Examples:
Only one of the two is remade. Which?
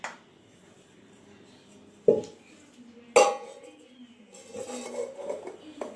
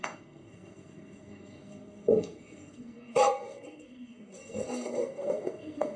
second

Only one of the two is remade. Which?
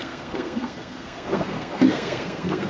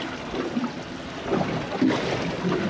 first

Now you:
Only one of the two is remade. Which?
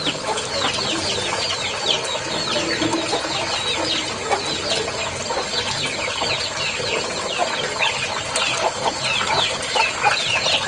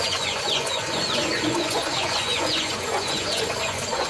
second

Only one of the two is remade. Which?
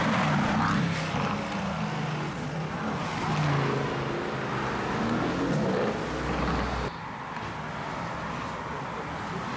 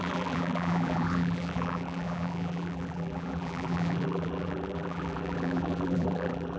second